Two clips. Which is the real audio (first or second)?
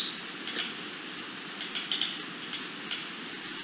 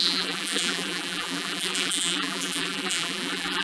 first